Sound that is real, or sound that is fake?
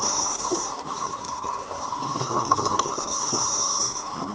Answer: fake